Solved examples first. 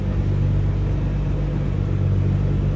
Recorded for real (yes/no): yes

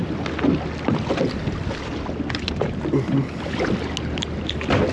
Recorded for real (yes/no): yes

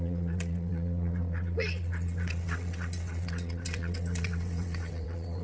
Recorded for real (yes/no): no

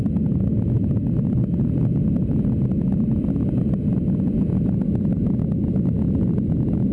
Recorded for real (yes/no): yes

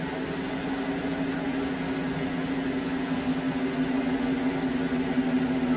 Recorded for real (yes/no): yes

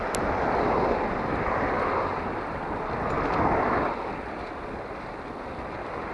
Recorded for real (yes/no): yes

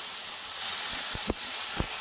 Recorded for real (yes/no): no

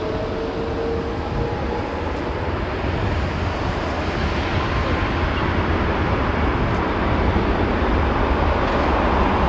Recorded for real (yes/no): yes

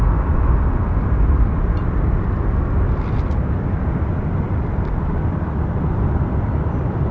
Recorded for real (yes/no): yes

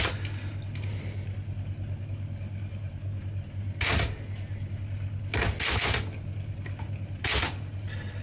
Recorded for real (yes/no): yes